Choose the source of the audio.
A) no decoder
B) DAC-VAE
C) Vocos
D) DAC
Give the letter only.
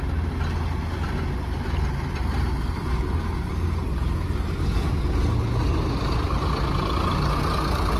A